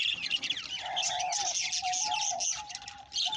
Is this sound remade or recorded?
recorded